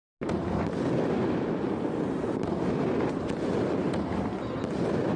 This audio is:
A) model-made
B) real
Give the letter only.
B